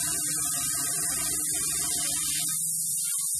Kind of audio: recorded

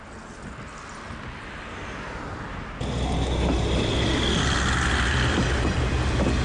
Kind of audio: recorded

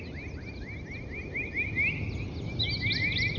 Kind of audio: recorded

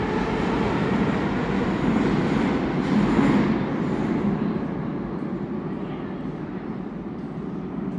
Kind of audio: recorded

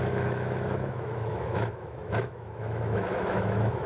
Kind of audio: remade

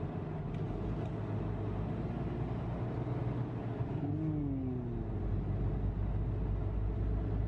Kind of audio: recorded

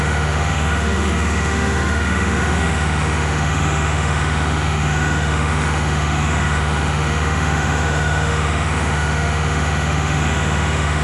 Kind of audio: remade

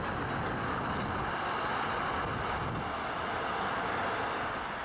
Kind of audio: recorded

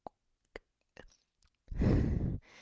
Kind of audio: recorded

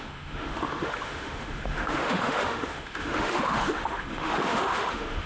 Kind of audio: remade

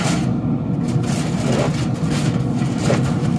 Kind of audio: recorded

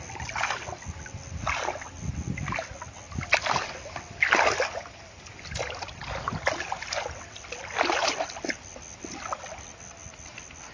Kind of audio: recorded